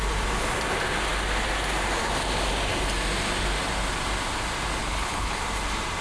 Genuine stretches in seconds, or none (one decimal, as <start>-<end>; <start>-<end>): 0.0-4.8; 5.4-6.0